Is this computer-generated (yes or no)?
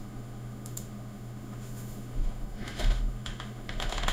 yes